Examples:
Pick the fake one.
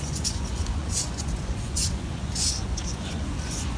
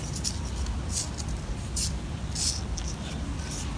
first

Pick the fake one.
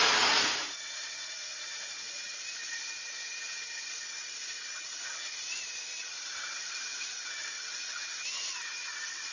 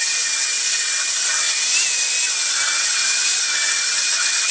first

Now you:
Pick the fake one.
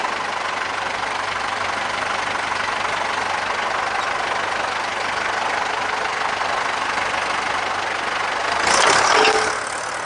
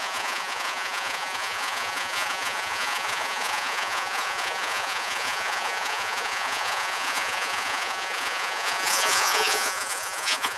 second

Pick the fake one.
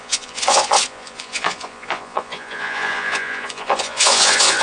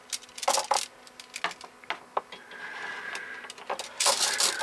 first